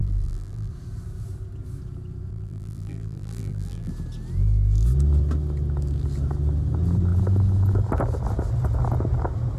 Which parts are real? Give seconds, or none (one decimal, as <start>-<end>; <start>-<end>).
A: 0.7-2.3; 3.9-9.6